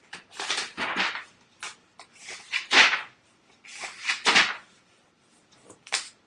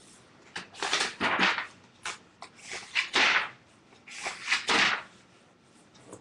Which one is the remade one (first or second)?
first